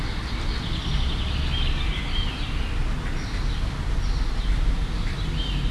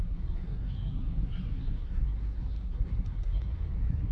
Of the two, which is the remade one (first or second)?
second